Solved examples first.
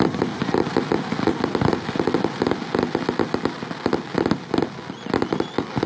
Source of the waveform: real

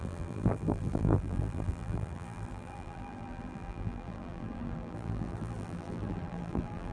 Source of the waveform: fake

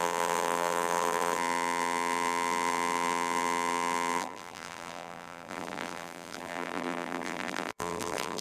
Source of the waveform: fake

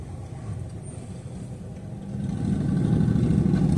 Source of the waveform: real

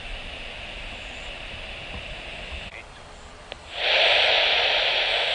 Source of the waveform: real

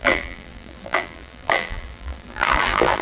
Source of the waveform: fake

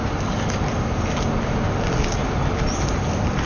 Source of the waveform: real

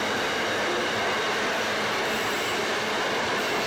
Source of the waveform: fake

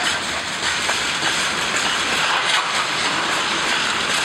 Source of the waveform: real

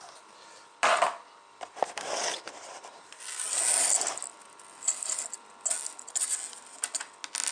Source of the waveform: real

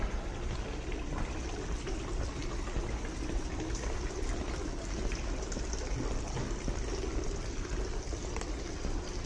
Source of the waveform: real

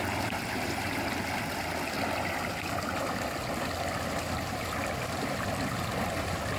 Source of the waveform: real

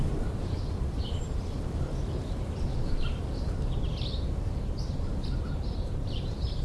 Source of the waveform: fake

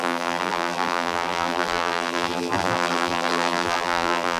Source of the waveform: fake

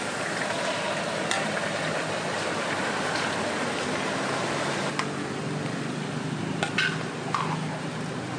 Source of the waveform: real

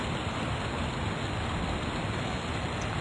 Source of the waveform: real